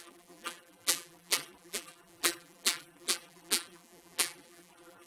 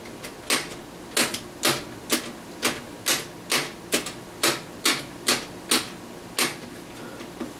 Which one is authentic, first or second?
second